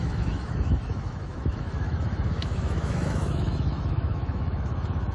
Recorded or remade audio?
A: remade